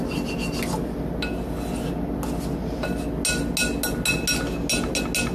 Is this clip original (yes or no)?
yes